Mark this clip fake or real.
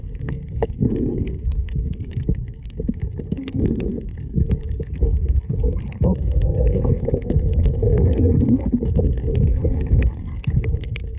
fake